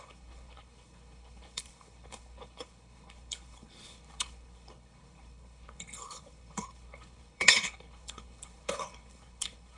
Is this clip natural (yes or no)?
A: no